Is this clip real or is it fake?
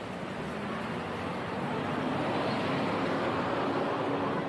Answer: real